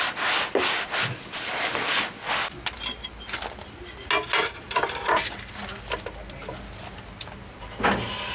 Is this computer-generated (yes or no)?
no